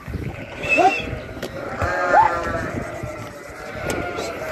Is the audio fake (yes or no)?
yes